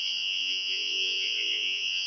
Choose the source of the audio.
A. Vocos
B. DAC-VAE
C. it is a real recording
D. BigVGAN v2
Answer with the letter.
A